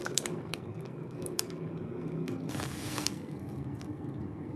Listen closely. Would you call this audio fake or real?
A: fake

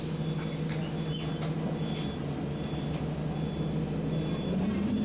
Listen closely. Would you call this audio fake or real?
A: real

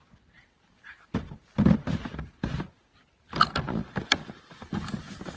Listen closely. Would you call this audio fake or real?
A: real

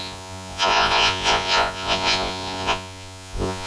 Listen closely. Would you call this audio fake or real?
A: fake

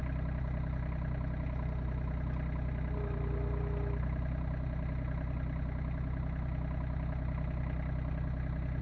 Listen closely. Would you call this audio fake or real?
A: real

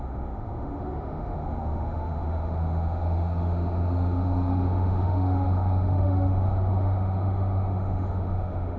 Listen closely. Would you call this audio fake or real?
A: fake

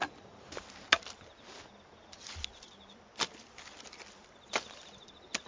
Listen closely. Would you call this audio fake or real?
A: real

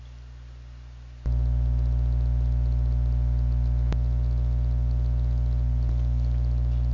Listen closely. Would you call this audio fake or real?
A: real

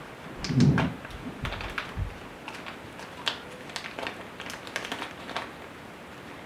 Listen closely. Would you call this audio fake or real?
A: real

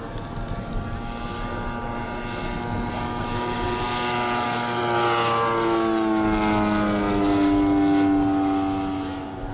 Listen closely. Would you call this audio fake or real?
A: real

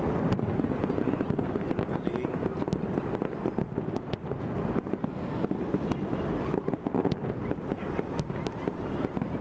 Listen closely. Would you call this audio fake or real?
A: real